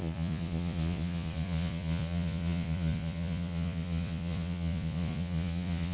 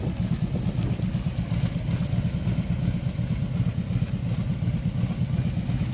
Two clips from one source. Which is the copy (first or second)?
first